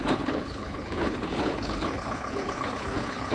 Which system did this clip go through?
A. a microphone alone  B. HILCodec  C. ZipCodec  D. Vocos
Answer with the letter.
B